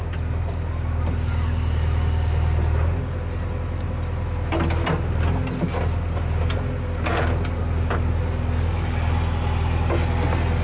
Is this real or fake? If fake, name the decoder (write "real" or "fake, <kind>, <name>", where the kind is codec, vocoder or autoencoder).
real